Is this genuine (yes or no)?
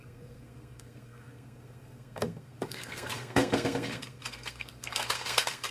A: no